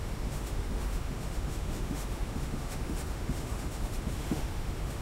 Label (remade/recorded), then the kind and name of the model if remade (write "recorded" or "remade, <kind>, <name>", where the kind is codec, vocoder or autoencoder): remade, autoencoder, DAC-VAE